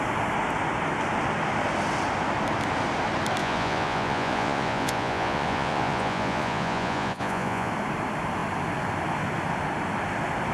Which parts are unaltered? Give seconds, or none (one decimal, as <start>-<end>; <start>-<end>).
0.0-3.4; 7.7-10.5